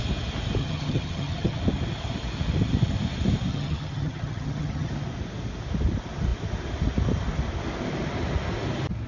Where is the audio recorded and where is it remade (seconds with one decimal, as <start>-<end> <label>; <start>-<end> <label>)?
0.0-0.6 recorded; 0.6-1.6 remade; 1.6-3.5 recorded; 3.5-4.9 remade; 4.9-9.1 recorded